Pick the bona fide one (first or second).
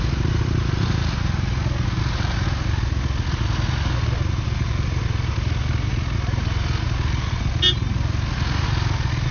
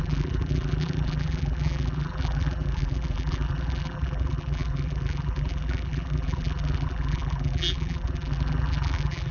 first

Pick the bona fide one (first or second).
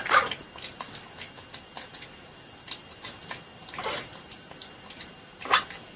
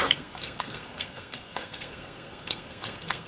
first